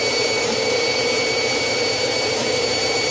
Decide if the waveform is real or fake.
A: fake